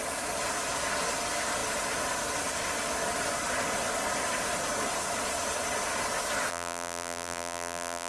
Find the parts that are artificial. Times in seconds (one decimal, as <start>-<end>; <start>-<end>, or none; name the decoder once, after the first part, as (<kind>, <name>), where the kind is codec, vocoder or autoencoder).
6.5-8.1 (vocoder, BigVGAN v2)